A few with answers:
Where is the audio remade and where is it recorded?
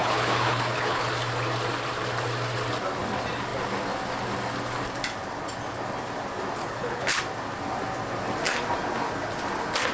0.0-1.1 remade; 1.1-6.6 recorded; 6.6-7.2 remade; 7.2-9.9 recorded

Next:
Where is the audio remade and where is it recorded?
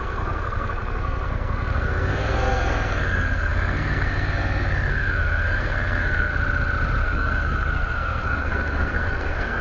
0.0-6.3 remade; 6.3-7.0 recorded; 7.0-9.6 remade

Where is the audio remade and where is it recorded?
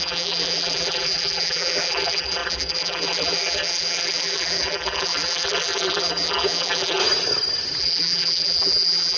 0.0-7.0 remade; 7.0-7.8 recorded; 7.8-9.2 remade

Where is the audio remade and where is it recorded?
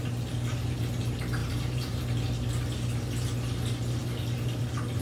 0.0-1.4 recorded; 1.4-2.0 remade; 2.0-5.0 recorded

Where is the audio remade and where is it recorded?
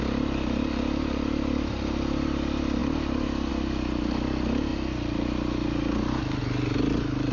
0.0-7.3 recorded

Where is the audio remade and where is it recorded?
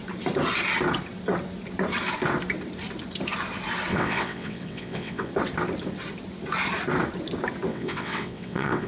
0.0-3.9 recorded; 3.9-5.3 remade; 5.3-7.7 recorded; 7.7-8.9 remade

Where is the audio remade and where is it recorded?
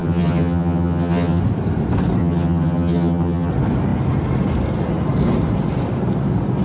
0.0-1.4 remade; 1.4-2.2 recorded; 2.2-3.5 remade; 3.5-6.6 recorded